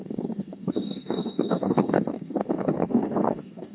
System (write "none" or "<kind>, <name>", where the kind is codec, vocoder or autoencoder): codec, DAC